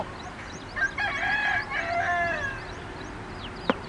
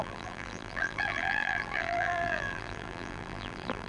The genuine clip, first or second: first